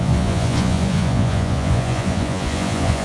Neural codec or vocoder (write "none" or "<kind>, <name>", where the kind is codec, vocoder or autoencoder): vocoder, Vocos